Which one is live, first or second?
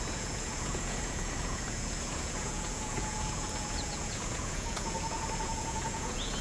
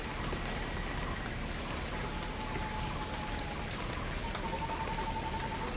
second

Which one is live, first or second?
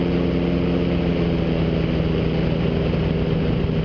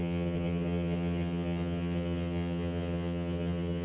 first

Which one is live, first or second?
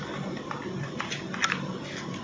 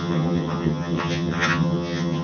first